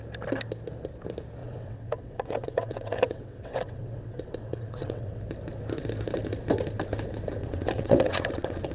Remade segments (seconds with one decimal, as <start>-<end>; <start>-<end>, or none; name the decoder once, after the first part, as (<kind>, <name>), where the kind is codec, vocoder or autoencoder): 1.4-5.2 (vocoder, WaveNeXt); 7.4-8.7